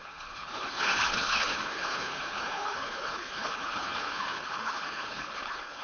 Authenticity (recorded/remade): remade